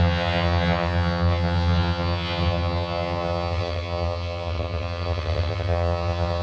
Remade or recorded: remade